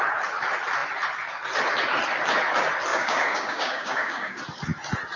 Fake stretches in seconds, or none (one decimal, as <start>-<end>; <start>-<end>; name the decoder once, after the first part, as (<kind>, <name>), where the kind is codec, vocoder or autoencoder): 2.9-4.4 (codec, DAC)